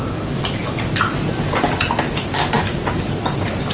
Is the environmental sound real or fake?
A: real